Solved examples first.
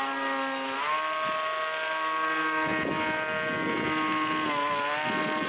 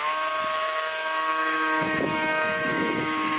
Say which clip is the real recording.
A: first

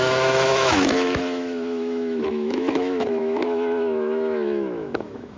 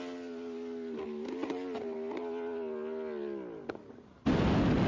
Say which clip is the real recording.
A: second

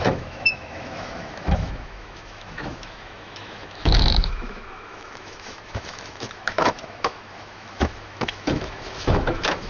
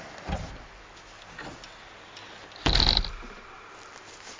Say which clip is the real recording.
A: second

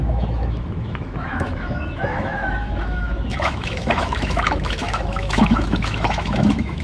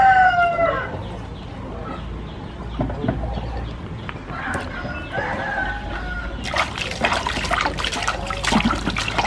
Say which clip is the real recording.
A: second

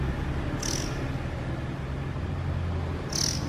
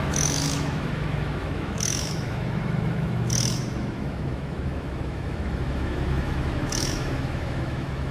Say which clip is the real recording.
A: first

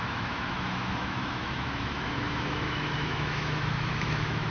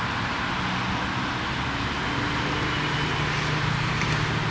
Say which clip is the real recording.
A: second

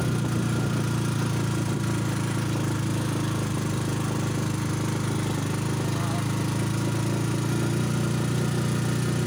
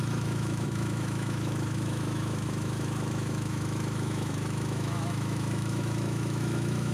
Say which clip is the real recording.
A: first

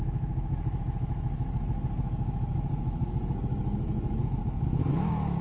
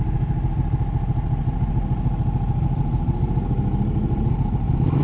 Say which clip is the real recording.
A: second